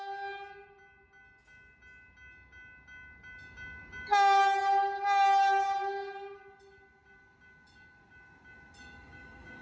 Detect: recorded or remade recorded